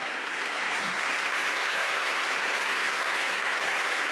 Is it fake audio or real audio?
fake